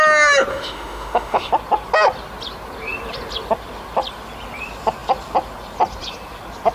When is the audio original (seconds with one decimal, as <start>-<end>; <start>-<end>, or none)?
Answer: 0.0-0.5; 1.5-6.7